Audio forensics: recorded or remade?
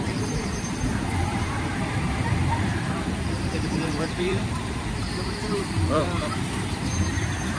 remade